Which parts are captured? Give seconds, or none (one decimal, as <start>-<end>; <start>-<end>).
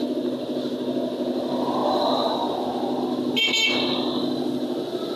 0.0-5.2